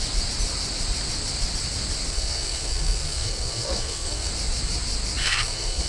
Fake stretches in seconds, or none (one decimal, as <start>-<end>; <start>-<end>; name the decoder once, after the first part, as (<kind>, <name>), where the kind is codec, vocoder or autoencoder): 2.1-4.3 (codec, SNAC); 5.2-5.9